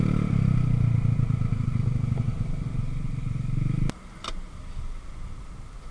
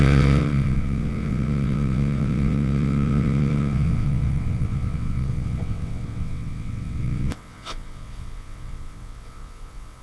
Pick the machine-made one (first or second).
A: second